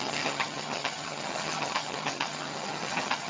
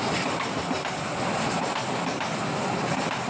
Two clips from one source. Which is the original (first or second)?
second